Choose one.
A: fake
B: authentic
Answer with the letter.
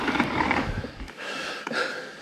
A